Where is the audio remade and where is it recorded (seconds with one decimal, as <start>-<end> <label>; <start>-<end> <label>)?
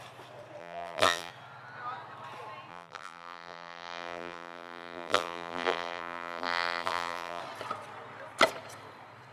0.0-0.6 recorded; 0.6-1.3 remade; 1.3-2.7 recorded; 2.7-7.4 remade; 7.4-9.3 recorded